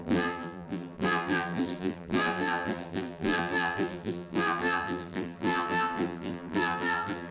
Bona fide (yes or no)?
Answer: no